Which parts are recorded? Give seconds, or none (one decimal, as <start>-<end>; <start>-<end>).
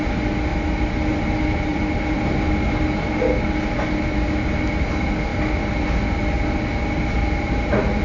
0.0-1.7; 2.5-8.0